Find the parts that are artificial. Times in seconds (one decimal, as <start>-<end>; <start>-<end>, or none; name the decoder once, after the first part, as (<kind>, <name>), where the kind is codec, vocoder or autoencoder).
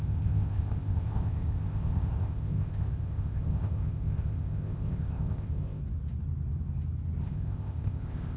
0.0-5.8 (codec, ZipCodec); 7.2-8.4